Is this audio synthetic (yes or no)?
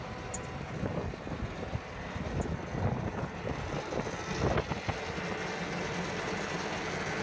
no